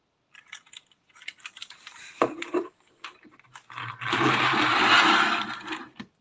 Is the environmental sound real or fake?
real